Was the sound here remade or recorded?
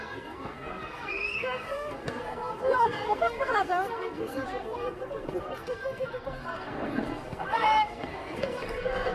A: remade